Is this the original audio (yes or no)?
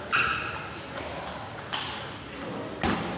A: yes